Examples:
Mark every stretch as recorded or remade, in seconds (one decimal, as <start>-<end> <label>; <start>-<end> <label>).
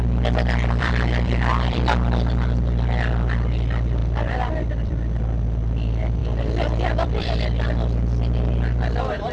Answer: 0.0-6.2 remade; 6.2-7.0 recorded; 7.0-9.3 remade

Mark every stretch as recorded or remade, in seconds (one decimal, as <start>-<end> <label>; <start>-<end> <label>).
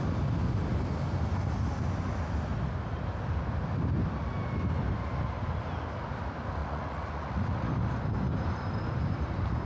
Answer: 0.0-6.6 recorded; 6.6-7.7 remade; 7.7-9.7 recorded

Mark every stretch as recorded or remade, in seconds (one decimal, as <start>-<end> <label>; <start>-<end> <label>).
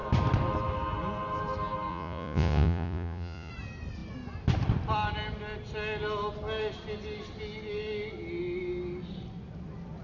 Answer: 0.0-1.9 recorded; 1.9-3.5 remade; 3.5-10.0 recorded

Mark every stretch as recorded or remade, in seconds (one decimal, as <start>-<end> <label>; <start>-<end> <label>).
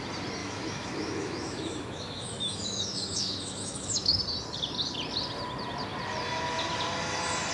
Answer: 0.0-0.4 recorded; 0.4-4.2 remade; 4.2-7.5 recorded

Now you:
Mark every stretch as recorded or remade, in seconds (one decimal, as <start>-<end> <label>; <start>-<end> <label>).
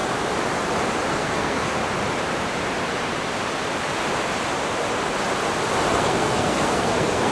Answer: 0.0-1.1 recorded; 1.1-1.8 remade; 1.8-5.9 recorded; 5.9-7.3 remade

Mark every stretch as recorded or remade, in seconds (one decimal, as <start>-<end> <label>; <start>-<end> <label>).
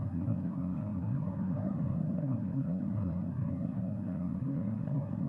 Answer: 0.0-5.3 remade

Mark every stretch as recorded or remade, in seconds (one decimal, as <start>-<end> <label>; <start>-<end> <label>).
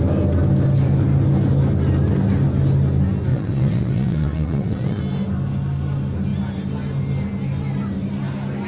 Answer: 0.0-3.3 recorded; 3.3-5.0 remade; 5.0-8.7 recorded